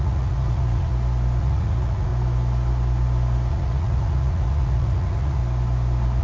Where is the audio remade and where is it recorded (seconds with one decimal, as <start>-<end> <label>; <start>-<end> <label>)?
0.0-0.9 remade; 0.9-1.4 recorded; 1.4-2.1 remade; 2.1-3.5 recorded; 3.5-5.4 remade; 5.4-6.2 recorded